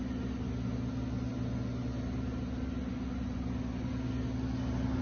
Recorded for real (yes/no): yes